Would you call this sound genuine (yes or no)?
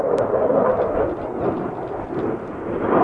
yes